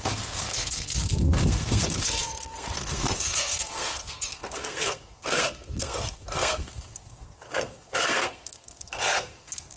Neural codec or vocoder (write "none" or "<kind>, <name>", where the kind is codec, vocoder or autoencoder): codec, SNAC